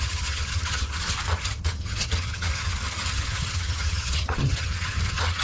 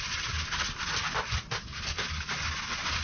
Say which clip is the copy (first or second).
first